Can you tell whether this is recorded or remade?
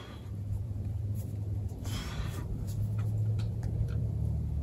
remade